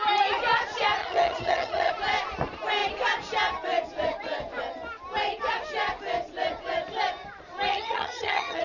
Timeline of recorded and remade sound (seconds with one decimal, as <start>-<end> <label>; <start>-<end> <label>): 0.0-1.0 recorded; 1.0-1.9 remade; 1.9-7.7 recorded; 7.7-8.6 remade